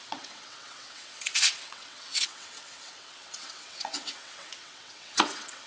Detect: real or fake fake